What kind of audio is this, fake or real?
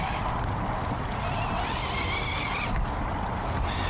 real